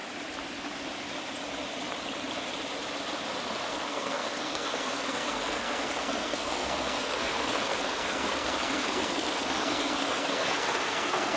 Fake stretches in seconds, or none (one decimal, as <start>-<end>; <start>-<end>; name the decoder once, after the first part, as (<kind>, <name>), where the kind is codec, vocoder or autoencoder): 3.7-11.4 (codec, SNAC)